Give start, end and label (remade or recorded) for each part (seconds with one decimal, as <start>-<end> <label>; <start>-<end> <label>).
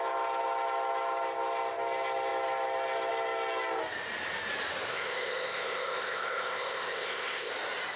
0.0-4.9 recorded; 4.9-7.5 remade; 7.5-8.0 recorded